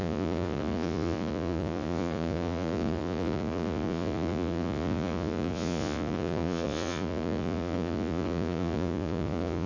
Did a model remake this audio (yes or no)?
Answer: yes